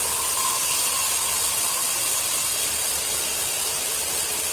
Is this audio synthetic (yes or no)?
no